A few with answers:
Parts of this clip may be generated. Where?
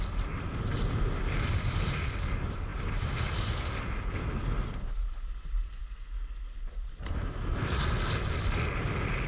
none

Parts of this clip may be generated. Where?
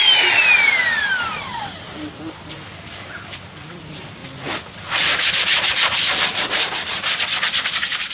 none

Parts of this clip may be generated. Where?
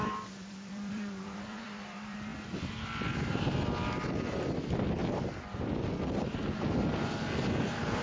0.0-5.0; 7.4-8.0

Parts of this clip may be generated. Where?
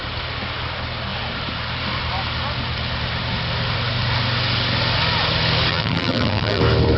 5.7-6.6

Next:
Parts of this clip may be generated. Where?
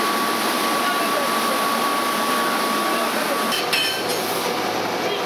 0.0-1.9; 3.6-4.1